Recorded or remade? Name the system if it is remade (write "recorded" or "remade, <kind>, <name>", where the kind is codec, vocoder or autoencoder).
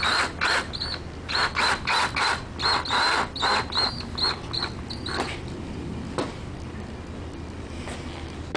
recorded